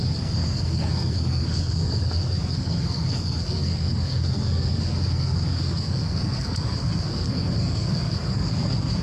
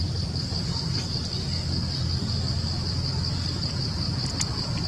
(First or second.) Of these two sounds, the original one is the second